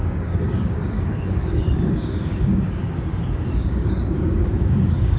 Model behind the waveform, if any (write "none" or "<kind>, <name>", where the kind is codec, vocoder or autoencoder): codec, DAC